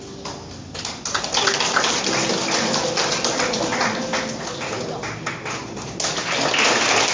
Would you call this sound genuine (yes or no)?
yes